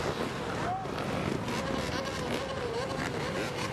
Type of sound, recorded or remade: recorded